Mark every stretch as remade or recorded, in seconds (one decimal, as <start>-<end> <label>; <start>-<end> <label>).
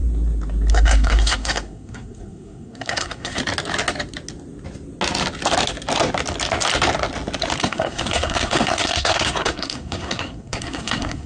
0.0-0.7 recorded; 0.7-3.4 remade; 3.4-7.6 recorded; 7.6-11.3 remade